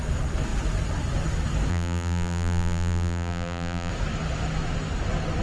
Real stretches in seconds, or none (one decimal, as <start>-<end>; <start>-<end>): 0.0-1.7; 3.9-5.4